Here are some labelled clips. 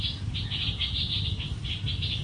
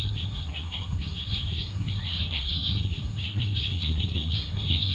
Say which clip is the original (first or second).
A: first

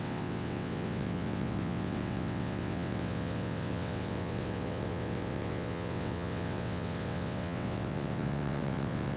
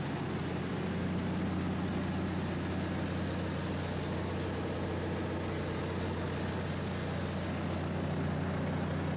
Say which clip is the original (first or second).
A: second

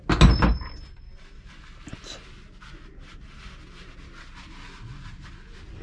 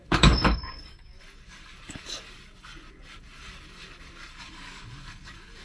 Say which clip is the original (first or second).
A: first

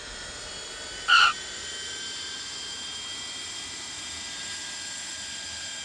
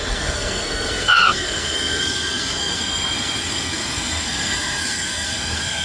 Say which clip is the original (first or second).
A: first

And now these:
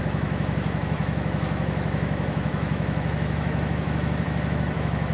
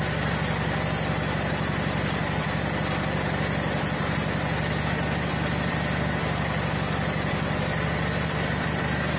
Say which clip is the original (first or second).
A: second